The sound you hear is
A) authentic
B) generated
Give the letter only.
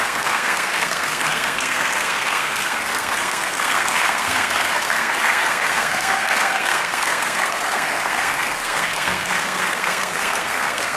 B